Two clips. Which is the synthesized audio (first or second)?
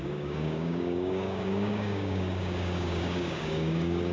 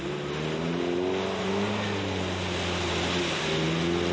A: first